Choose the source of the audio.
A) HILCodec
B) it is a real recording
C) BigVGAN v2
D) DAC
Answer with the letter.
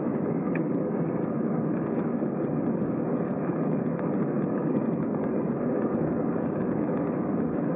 D